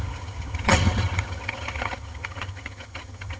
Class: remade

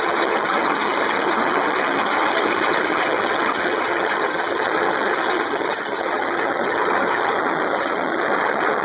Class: remade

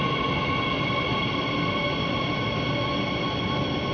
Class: recorded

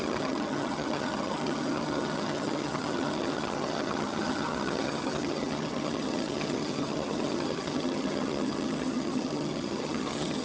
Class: remade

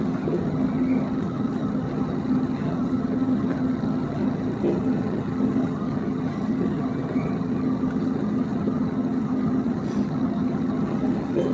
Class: remade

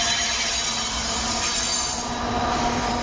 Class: recorded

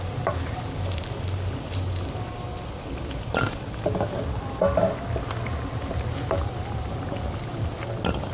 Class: recorded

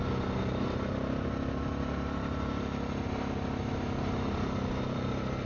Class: recorded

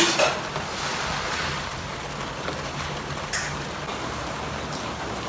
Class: recorded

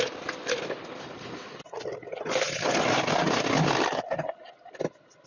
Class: recorded